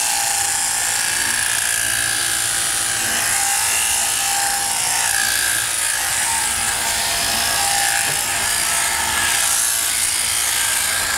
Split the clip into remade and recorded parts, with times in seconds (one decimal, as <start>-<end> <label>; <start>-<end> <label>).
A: 0.0-11.2 recorded